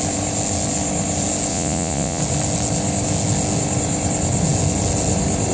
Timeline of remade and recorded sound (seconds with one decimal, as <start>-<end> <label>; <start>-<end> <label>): 0.0-1.5 recorded; 1.5-2.2 remade; 2.2-5.5 recorded